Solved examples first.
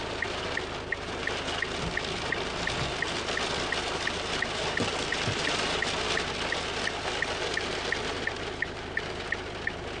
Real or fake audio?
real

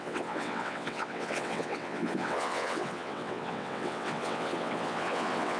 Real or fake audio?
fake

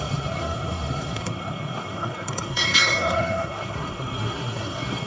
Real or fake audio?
fake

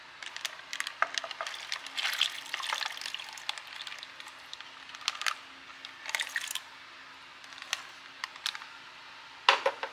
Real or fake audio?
real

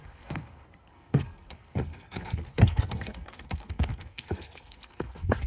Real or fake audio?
fake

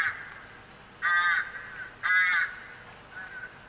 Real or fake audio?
real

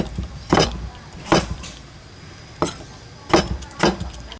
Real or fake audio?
fake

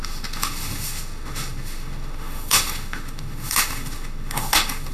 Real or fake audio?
fake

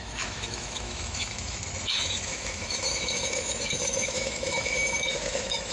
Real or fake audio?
fake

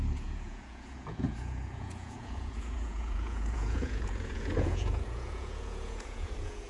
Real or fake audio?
fake